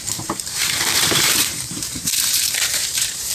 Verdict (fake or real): fake